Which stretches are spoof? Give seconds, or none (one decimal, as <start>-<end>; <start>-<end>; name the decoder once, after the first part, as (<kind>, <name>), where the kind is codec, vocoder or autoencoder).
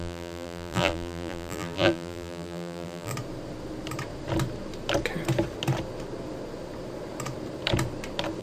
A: 0.0-3.1 (vocoder, BigVGAN v2)